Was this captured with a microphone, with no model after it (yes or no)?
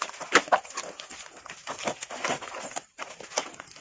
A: yes